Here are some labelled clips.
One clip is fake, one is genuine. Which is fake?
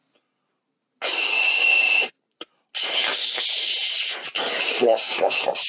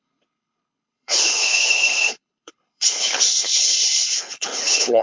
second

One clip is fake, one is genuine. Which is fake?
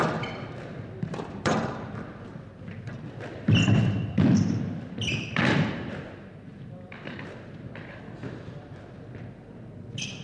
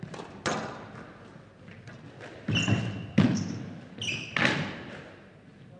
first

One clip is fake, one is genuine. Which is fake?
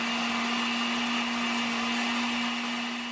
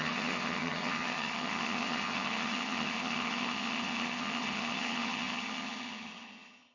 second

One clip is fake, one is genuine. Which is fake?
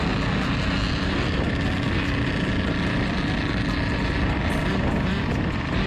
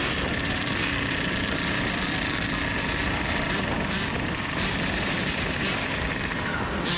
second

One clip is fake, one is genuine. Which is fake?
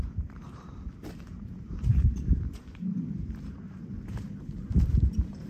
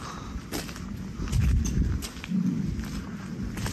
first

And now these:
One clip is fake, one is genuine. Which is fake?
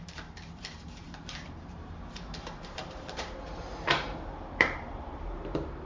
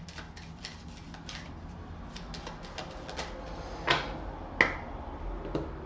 first